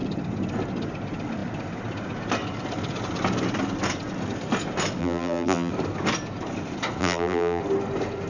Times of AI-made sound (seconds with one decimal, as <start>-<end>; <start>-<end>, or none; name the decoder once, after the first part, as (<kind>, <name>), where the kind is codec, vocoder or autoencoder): 5.0-5.7 (vocoder, BigVGAN v2); 7.0-7.6